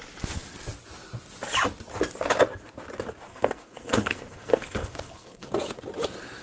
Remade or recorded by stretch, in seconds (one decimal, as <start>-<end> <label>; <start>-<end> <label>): 0.0-3.3 recorded; 3.3-5.5 remade; 5.5-6.4 recorded